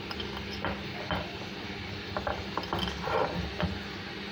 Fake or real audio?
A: real